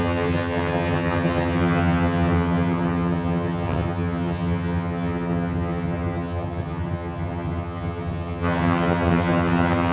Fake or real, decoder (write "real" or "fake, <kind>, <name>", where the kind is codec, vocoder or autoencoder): fake, vocoder, HiFi-GAN